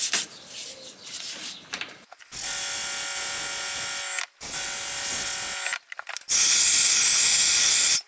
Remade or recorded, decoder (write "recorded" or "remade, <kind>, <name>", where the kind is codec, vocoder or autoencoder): recorded